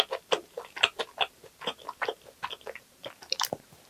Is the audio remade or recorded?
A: recorded